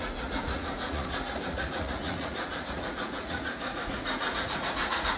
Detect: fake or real fake